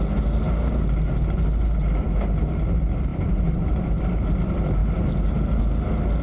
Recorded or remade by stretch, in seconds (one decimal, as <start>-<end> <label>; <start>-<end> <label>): 0.0-3.1 recorded; 3.1-4.2 remade; 4.2-4.8 recorded; 4.8-5.6 remade; 5.6-6.2 recorded